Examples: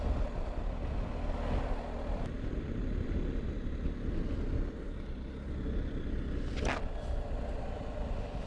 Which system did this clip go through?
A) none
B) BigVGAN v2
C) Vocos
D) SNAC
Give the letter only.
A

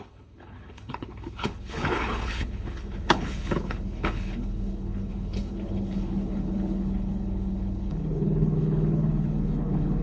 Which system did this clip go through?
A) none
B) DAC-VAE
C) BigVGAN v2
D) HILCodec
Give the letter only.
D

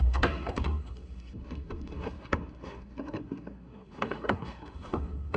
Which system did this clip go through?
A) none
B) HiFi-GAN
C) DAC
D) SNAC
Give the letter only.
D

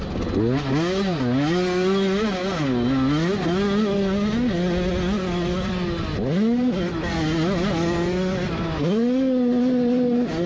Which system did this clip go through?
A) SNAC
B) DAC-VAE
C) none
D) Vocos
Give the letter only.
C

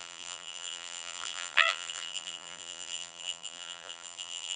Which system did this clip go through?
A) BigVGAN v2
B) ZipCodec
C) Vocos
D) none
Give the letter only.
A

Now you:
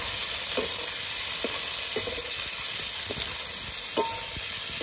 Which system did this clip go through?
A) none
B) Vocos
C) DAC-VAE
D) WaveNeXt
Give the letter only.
A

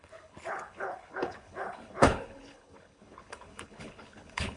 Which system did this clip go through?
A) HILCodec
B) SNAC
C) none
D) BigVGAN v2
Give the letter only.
A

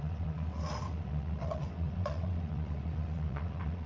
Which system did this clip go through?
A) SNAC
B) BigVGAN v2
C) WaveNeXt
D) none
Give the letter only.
C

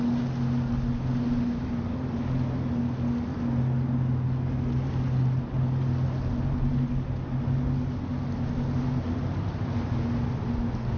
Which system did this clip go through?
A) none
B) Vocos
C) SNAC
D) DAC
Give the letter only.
A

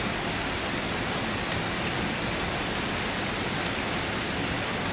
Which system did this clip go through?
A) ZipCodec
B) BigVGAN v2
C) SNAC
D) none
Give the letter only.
D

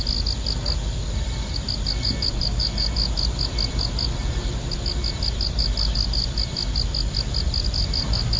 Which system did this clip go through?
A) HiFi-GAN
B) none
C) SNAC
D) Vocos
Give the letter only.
B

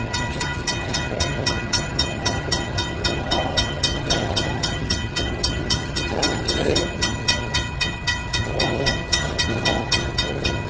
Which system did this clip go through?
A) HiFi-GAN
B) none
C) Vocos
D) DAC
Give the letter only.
A